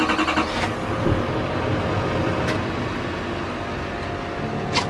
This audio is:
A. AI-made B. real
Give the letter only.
B